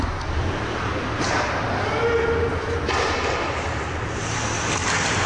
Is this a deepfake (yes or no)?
no